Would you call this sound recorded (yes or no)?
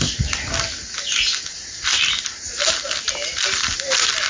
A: yes